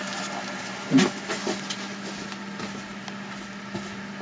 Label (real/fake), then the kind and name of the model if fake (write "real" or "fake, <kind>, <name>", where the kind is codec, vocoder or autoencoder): real